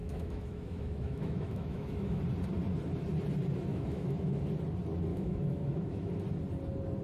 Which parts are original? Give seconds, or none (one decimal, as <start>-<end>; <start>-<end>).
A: 2.2-3.7; 4.4-5.1; 6.1-7.0